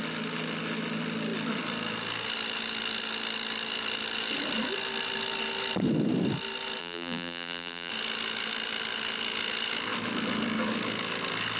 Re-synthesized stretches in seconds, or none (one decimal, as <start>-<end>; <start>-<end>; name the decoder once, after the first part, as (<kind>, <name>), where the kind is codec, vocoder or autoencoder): 6.8-7.9 (vocoder, BigVGAN v2)